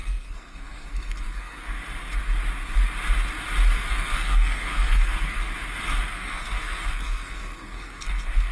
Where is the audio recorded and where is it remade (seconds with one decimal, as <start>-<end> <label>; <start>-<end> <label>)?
0.0-1.8 remade; 1.8-3.7 recorded; 3.7-5.5 remade; 5.5-6.1 recorded; 6.1-8.5 remade